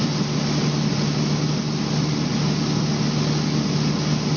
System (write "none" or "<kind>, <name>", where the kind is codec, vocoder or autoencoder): none